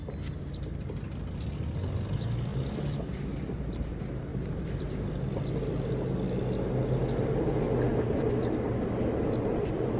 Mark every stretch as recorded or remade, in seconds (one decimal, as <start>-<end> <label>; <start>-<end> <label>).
0.0-2.5 recorded; 2.5-3.7 remade; 3.7-4.3 recorded; 4.3-5.0 remade; 5.0-10.0 recorded